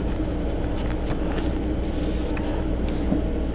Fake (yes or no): no